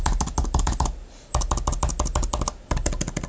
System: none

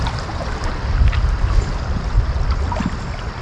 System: none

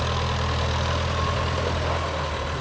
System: none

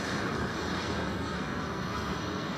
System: codec, SNAC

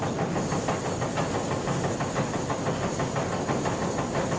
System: none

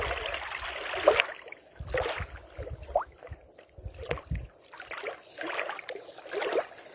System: none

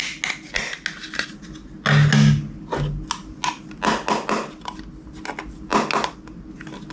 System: none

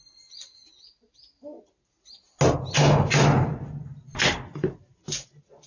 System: none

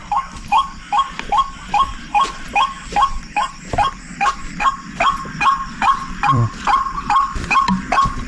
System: vocoder, BigVGAN v2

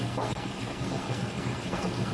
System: codec, SNAC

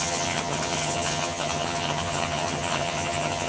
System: vocoder, HiFi-GAN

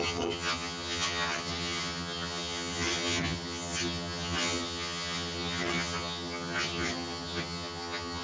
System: vocoder, HiFi-GAN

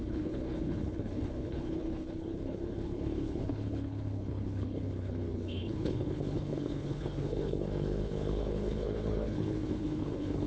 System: codec, HILCodec